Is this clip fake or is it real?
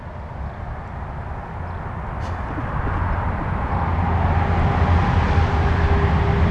real